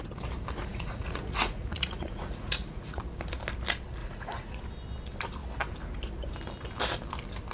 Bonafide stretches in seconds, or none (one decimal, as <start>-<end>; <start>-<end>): 0.0-0.7; 3.0-4.0; 4.6-7.5